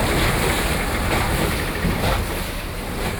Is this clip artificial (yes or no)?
no